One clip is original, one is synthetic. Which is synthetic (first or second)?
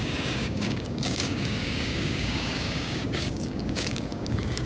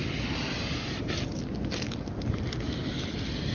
first